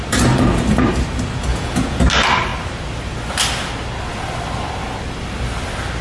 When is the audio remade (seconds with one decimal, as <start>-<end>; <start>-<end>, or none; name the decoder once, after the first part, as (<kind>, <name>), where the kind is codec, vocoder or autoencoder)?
1.5-2.0 (vocoder, Vocos)